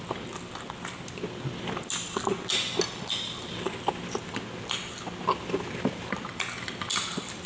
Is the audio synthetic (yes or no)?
no